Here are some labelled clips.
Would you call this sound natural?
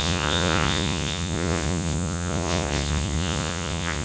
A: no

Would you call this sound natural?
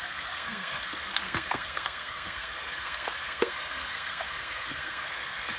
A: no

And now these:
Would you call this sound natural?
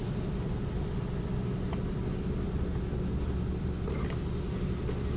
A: yes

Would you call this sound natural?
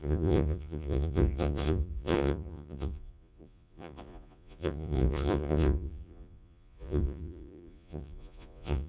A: no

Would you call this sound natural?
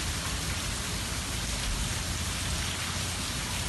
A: yes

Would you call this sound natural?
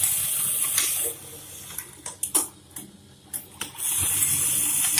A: yes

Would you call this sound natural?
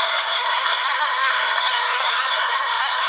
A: no